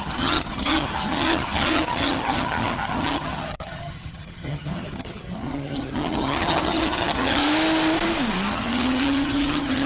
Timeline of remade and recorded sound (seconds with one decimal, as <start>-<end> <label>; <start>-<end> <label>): 0.0-7.4 remade; 7.4-8.5 recorded; 8.5-9.9 remade